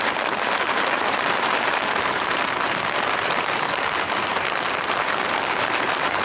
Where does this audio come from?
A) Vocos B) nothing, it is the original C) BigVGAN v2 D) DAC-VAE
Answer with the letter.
C